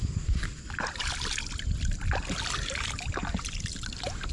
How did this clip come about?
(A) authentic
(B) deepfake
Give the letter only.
A